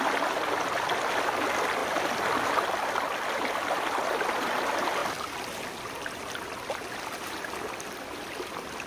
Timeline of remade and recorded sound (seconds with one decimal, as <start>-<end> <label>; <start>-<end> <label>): 0.0-8.9 recorded